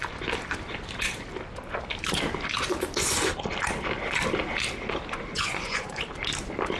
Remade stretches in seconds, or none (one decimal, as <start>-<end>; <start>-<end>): 5.3-6.0

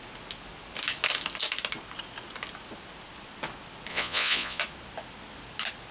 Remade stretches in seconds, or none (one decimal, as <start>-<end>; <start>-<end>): 3.9-4.6

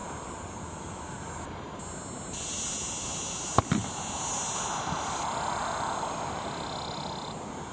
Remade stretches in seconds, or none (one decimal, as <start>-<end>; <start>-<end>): none

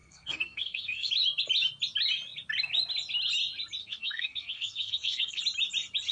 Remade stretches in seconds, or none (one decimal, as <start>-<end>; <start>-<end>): 0.0-1.1; 3.8-5.4

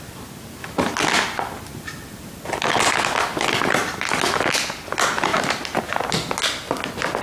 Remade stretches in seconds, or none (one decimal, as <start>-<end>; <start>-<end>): none

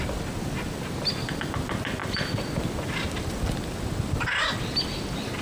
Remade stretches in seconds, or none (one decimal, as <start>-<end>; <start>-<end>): none

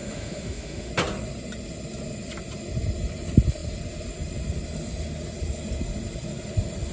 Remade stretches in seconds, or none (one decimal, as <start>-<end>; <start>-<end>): 0.0-0.9